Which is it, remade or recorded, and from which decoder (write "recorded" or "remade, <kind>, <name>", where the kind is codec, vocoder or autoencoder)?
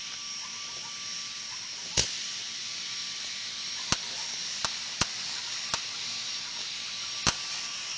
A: recorded